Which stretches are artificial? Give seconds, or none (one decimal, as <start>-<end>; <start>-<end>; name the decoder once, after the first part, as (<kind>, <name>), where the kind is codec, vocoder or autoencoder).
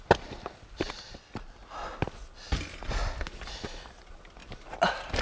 none